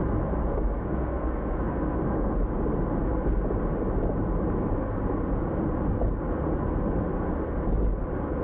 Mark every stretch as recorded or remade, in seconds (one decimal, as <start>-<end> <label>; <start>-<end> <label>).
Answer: 0.0-0.4 recorded; 0.4-2.4 remade; 2.4-8.4 recorded